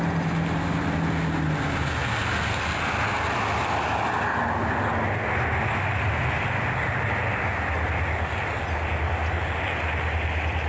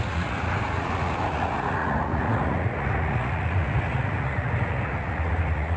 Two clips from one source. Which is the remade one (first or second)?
second